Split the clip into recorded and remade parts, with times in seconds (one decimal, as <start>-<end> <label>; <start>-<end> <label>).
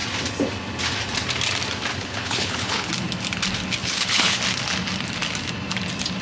0.0-1.9 recorded; 1.9-2.9 remade; 2.9-3.8 recorded; 3.8-4.4 remade; 4.4-6.2 recorded